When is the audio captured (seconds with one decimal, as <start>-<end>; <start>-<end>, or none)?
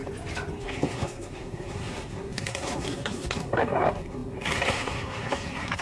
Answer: 0.0-0.6